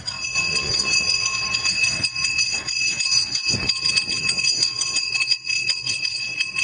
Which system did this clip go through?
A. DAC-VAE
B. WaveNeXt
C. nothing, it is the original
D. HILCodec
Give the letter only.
B